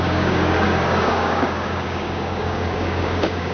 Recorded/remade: remade